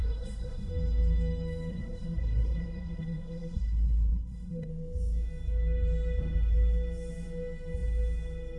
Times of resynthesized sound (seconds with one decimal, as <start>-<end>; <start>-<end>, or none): 0.0-0.7; 1.7-4.7